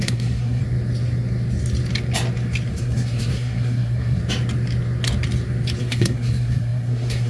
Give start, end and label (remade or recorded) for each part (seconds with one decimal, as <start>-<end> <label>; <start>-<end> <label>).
0.0-0.6 remade; 0.6-2.7 recorded; 2.7-4.2 remade; 4.2-5.8 recorded; 5.8-7.3 remade